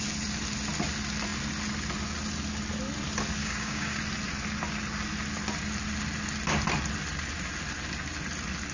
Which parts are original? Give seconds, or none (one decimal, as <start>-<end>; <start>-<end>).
0.0-3.4; 4.0-8.7